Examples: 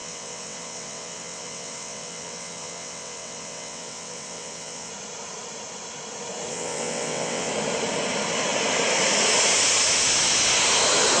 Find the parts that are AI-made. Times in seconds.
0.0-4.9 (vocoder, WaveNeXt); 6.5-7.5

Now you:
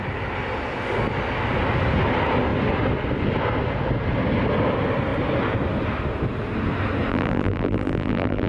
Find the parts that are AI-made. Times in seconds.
7.1-8.5 (vocoder, BigVGAN v2)

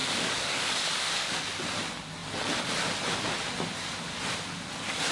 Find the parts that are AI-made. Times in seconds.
0.0-1.6 (codec, DAC)

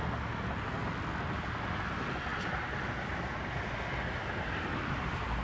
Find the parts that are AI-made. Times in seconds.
none

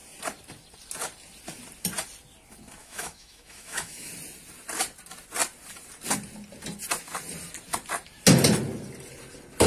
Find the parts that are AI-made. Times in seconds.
2.8-4.1 (autoencoder, DAC-VAE)

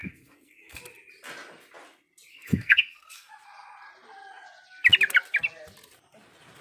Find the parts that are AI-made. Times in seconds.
0.0-0.8 (codec, SNAC); 2.3-3.3

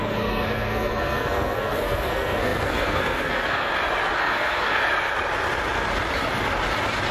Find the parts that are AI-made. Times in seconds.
0.0-3.7 (codec, SNAC); 4.2-4.8

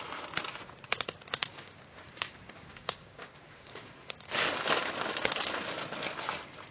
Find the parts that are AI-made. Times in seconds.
1.4-3.9 (codec, DAC)